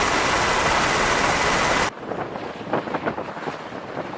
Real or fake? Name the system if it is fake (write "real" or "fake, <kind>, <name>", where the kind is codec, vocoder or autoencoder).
real